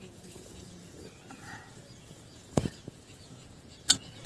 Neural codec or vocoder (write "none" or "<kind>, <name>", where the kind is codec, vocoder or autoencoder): vocoder, Vocos